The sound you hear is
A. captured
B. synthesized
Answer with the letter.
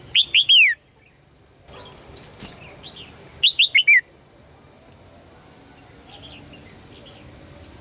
A